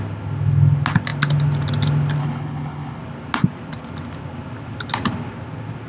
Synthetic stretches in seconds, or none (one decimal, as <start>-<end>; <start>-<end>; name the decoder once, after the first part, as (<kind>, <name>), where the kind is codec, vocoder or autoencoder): 2.2-3.0 (codec, HILCodec)